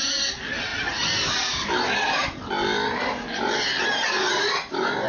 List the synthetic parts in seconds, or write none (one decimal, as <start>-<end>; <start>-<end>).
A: none